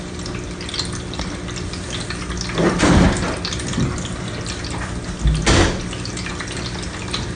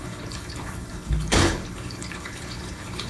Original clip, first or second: first